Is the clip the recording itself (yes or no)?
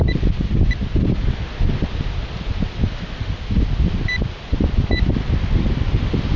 yes